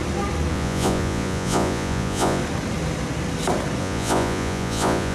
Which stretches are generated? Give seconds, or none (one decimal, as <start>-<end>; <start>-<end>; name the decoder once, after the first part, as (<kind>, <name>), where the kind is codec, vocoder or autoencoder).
0.5-2.4 (vocoder, Vocos); 3.8-5.1